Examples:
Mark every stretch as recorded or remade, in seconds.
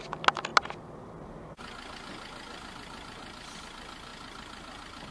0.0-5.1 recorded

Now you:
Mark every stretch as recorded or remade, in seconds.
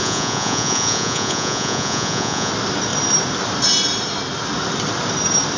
0.0-2.5 remade; 2.5-5.6 recorded